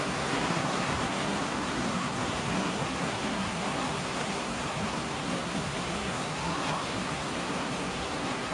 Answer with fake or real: fake